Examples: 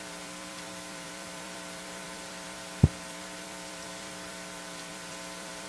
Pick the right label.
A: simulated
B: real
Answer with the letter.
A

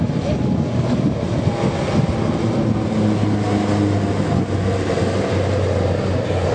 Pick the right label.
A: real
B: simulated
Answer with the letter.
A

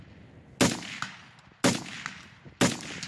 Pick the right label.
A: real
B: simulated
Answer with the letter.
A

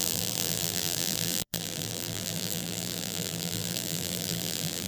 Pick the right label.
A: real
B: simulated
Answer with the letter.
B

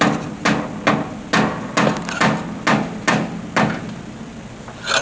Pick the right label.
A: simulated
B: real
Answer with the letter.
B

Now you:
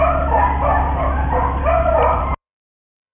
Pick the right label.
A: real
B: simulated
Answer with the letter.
B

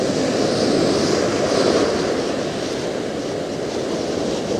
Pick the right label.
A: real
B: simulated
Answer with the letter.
A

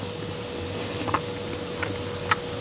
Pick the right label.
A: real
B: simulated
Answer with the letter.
A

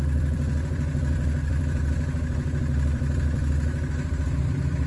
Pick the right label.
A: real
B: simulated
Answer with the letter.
B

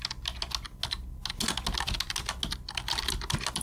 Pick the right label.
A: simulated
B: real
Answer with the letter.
B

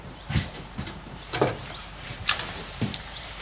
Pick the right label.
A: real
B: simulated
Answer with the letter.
B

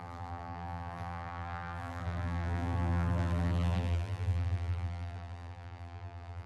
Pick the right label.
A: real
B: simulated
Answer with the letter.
B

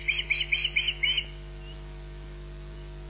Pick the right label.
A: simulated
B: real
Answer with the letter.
B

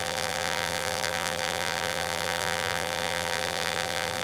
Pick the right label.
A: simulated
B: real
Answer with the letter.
A